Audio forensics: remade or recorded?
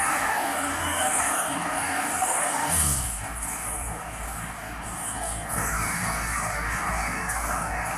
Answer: remade